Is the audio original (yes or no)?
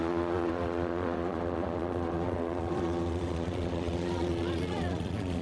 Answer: no